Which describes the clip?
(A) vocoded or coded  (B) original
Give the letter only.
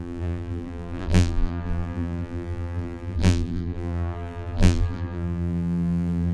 A